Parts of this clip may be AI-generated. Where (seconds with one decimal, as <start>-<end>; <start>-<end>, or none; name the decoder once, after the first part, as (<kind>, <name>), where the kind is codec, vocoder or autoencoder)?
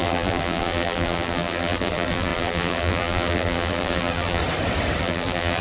0.0-4.4 (vocoder, BigVGAN v2); 5.0-5.6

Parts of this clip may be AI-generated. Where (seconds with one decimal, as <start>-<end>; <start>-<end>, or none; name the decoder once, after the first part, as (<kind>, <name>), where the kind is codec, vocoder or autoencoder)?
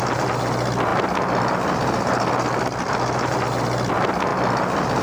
none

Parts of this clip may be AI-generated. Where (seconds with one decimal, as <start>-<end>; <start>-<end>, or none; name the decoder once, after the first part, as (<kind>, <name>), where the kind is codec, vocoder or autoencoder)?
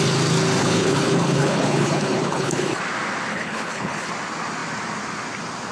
0.6-2.8 (codec, HILCodec); 3.3-4.1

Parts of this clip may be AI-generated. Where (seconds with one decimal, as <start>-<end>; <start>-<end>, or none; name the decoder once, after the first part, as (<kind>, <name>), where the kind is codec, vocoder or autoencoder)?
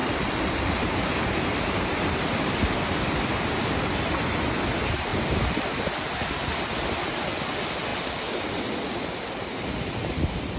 0.0-2.7 (vocoder, BigVGAN v2)